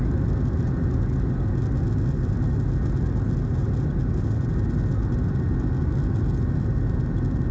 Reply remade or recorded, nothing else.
recorded